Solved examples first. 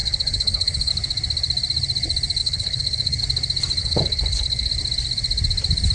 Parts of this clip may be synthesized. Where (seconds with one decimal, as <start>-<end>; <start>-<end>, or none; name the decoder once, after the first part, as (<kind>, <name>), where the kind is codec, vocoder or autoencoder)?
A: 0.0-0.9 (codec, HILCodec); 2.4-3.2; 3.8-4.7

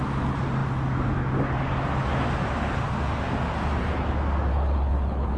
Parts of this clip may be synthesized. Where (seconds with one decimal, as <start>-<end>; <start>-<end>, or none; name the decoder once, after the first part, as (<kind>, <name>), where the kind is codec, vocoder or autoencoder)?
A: 4.5-5.4 (codec, HILCodec)

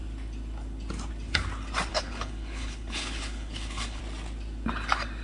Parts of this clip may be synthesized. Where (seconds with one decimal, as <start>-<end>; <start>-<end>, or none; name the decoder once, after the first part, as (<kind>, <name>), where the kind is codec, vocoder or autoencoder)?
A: 1.9-4.0 (codec, HILCodec)

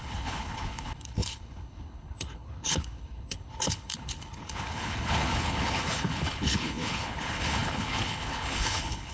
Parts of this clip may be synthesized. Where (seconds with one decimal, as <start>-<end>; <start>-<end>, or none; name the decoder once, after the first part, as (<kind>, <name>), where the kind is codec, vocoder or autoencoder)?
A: 0.0-9.1 (codec, HILCodec)

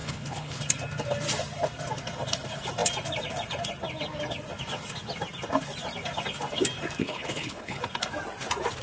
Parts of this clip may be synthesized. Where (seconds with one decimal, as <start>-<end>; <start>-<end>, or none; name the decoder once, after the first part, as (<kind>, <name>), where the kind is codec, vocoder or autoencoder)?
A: 0.0-0.6 (codec, HILCodec); 7.0-7.8

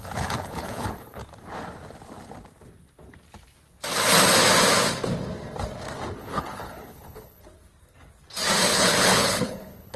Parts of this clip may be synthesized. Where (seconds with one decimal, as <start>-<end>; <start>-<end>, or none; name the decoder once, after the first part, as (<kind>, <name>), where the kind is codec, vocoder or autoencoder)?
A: 0.0-1.2 (codec, HILCodec); 6.2-7.4; 8.7-10.0